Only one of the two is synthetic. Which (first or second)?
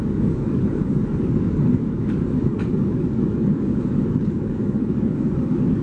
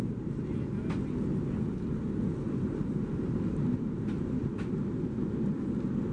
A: first